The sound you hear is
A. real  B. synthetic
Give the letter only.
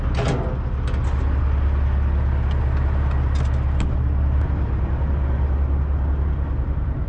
A